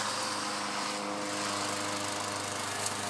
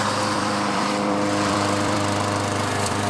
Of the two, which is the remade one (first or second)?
second